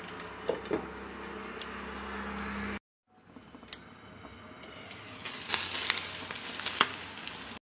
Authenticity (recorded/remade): recorded